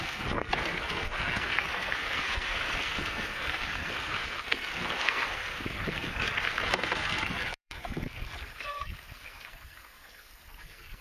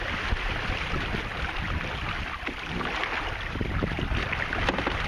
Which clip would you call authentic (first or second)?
second